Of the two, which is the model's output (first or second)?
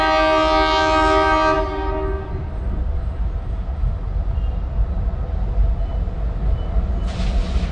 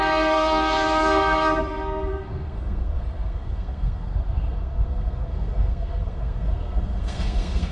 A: second